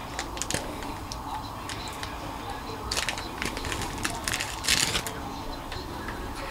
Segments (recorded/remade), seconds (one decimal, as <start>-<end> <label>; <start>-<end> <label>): 0.0-6.5 recorded